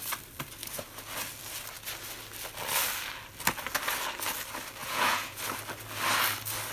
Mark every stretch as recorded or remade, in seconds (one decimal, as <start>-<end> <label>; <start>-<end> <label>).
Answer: 0.0-4.8 recorded; 4.8-5.4 remade; 5.4-6.7 recorded